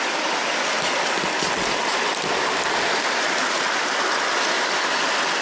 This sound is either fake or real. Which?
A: real